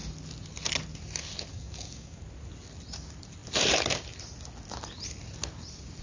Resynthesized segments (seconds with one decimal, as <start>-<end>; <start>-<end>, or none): 1.5-2.2